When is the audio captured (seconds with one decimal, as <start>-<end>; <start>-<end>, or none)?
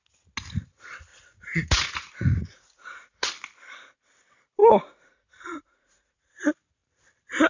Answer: 0.0-1.1; 3.3-4.6; 6.3-7.5